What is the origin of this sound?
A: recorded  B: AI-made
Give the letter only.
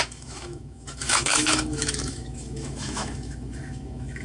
B